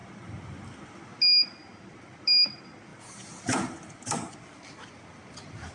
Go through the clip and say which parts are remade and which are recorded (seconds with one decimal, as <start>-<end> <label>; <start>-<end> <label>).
0.0-1.0 remade; 1.0-2.9 recorded; 2.9-4.3 remade; 4.3-5.7 recorded